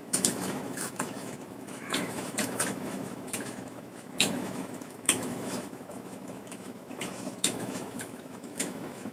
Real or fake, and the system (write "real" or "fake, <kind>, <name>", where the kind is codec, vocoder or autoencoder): fake, autoencoder, DAC-VAE